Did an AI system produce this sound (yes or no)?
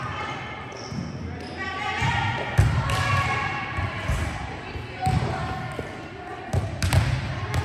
no